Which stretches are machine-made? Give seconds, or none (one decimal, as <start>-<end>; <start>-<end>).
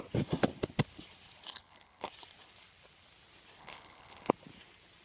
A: 1.5-2.1; 3.6-4.3